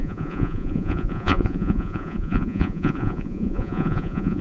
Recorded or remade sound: remade